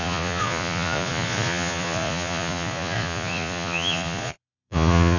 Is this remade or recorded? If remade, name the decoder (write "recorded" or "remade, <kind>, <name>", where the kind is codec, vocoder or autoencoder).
remade, vocoder, Vocos